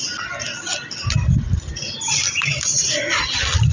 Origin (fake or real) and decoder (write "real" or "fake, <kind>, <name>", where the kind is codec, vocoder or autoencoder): real